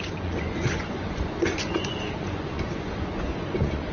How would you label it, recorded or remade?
remade